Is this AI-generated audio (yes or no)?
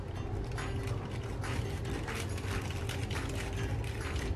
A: no